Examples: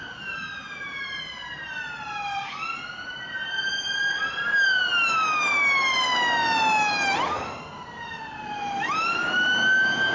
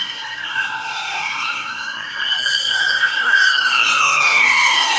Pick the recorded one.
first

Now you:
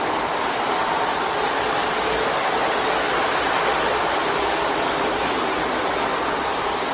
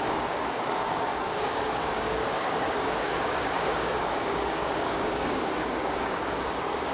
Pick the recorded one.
first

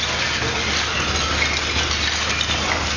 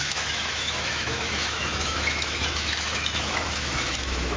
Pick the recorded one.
first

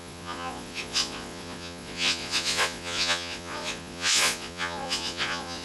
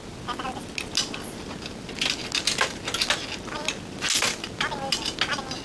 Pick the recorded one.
second